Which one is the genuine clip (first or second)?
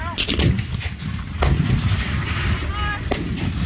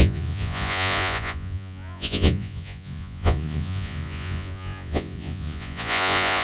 first